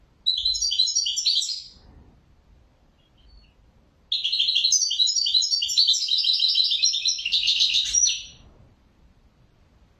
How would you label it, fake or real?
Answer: real